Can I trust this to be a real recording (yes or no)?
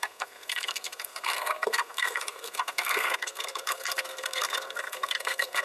no